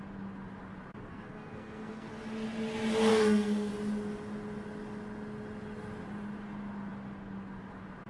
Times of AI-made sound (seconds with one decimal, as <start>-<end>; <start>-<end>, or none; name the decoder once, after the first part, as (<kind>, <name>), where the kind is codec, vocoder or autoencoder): 1.1-2.1 (codec, SNAC); 3.1-3.7